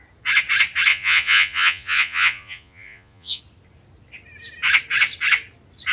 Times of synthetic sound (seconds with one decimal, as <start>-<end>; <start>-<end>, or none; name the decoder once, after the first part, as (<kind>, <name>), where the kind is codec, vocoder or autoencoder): 0.9-3.4 (vocoder, Vocos)